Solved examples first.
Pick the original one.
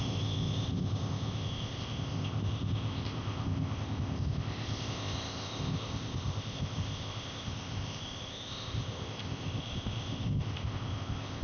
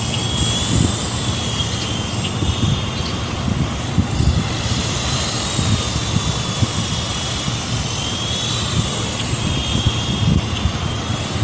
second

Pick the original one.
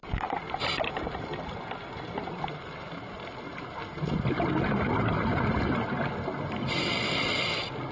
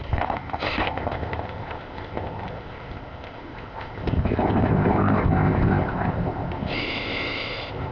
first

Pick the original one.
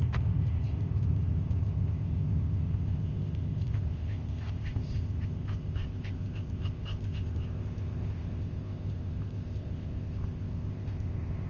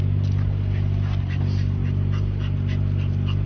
second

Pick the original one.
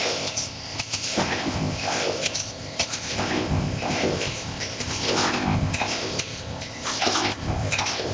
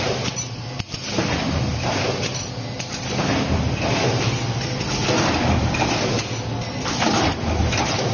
second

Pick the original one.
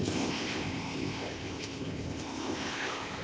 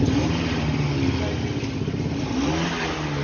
second